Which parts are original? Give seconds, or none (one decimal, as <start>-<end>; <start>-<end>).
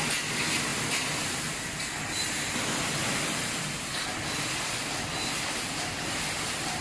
0.0-6.8